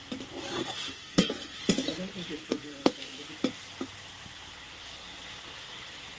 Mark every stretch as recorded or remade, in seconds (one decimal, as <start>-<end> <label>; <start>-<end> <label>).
0.0-0.6 recorded; 0.6-1.6 remade; 1.6-2.4 recorded; 2.4-3.3 remade; 3.3-6.2 recorded

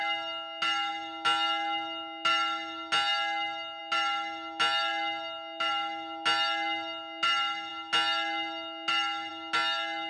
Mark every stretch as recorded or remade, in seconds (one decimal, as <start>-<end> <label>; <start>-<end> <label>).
0.0-10.1 recorded

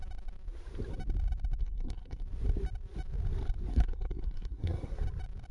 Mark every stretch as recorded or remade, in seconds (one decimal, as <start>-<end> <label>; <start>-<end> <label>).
0.0-1.6 recorded; 1.6-2.2 remade; 2.2-3.7 recorded; 3.7-5.0 remade; 5.0-5.5 recorded

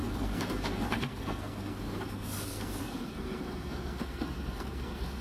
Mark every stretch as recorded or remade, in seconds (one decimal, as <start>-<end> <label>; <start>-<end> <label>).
0.0-5.2 remade

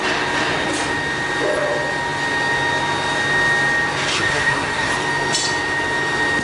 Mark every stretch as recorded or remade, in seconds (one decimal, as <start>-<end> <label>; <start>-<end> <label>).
0.0-4.1 recorded; 4.1-4.9 remade; 4.9-6.4 recorded

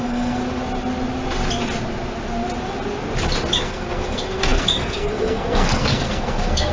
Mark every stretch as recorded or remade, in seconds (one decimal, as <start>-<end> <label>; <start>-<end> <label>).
0.0-0.4 remade; 0.4-3.6 recorded; 3.6-6.7 remade